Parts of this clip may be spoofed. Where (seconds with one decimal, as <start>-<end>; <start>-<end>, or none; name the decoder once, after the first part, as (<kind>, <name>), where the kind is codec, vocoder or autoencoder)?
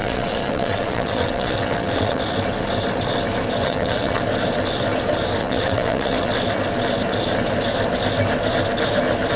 0.0-2.2 (vocoder, WaveNeXt); 3.6-4.2; 5.4-6.3